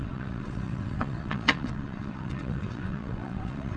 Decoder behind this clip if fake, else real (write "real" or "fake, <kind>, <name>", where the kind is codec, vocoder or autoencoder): fake, vocoder, WaveNeXt